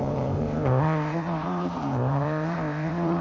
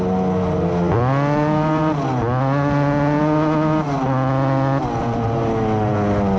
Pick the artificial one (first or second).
first